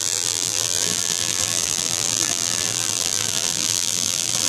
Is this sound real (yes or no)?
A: no